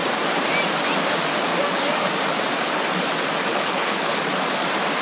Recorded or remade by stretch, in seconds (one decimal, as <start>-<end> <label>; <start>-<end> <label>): 0.0-3.5 recorded; 3.5-4.2 remade; 4.2-5.0 recorded